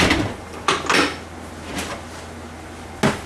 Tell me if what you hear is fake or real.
real